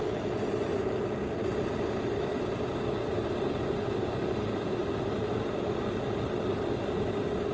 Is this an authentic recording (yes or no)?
yes